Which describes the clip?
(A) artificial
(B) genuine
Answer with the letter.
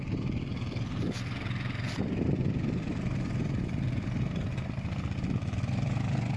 A